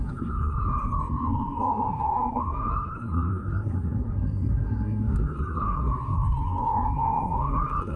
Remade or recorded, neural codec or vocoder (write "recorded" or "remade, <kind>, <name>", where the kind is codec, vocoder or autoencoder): remade, codec, SNAC